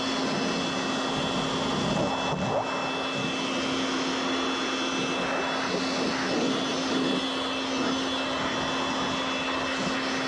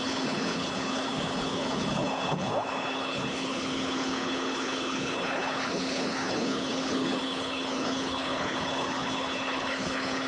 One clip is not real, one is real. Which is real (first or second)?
first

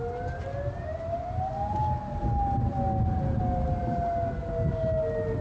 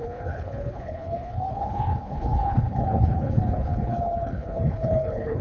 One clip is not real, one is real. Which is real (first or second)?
first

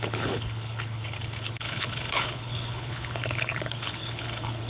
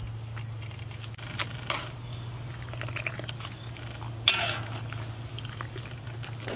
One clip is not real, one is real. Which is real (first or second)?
second